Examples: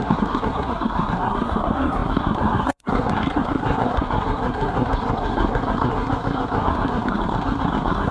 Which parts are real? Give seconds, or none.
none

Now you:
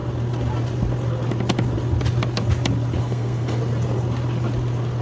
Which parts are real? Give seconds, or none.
0.0-3.0; 3.6-5.0

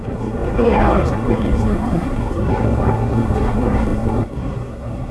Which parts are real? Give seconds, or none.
none